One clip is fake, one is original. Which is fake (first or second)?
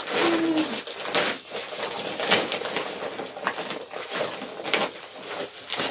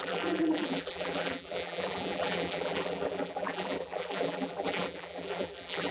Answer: second